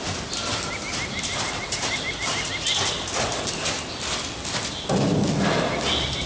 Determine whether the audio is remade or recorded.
recorded